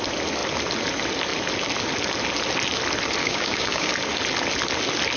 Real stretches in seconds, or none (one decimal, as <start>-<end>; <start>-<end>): 0.0-3.2; 3.9-5.2